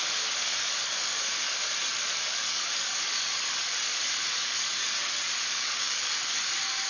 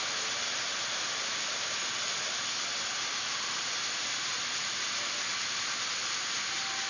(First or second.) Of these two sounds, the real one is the second